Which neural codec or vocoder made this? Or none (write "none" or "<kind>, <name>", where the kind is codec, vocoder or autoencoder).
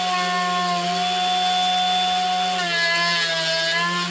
none